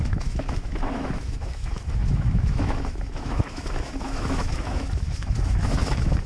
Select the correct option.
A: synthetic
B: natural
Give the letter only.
A